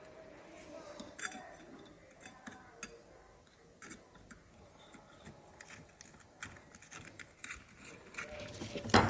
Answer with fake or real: real